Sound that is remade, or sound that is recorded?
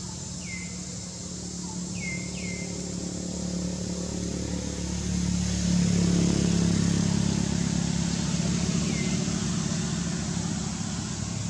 recorded